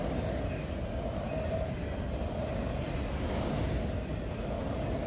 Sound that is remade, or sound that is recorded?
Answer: recorded